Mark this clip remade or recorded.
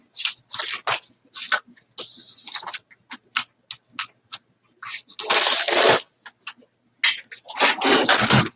recorded